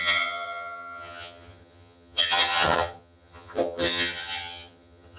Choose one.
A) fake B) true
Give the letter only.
A